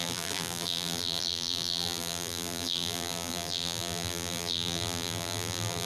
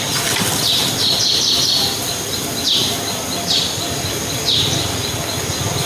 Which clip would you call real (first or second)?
second